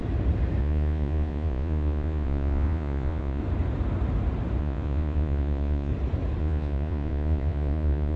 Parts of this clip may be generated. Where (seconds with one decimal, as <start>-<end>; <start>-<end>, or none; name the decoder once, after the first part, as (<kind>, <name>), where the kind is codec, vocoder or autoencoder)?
0.6-3.4 (vocoder, Vocos); 4.6-5.9; 6.4-8.2